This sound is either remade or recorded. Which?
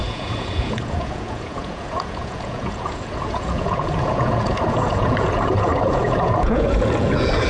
remade